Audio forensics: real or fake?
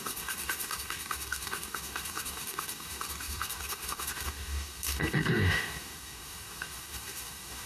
fake